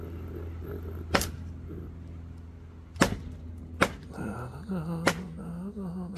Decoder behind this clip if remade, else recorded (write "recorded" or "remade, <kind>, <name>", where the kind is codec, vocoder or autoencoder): recorded